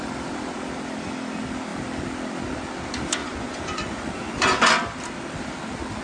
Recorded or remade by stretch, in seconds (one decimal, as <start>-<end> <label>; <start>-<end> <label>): 0.0-3.2 recorded; 3.2-4.7 remade; 4.7-6.0 recorded